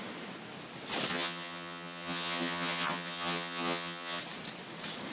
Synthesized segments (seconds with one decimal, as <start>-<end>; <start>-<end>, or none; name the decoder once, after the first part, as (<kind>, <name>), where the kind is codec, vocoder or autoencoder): 1.1-4.2 (vocoder, HiFi-GAN)